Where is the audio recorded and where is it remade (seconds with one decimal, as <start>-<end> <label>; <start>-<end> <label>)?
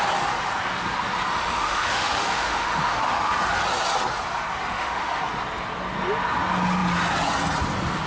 0.0-1.3 recorded; 1.3-3.3 remade; 3.3-4.7 recorded; 4.7-5.2 remade; 5.2-8.1 recorded